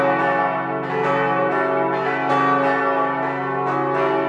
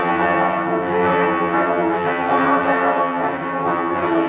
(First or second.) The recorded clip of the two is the first